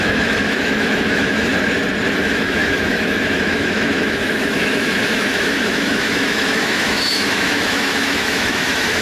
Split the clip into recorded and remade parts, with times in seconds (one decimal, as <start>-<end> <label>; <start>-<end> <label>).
0.0-1.5 remade; 1.5-2.2 recorded; 2.2-9.0 remade